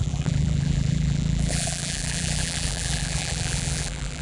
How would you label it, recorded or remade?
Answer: remade